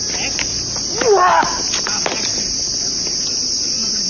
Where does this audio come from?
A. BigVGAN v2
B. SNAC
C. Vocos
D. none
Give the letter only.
D